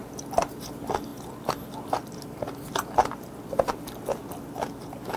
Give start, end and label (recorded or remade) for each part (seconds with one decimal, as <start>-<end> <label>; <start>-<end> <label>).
0.0-5.2 recorded